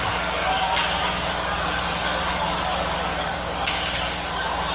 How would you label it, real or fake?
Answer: fake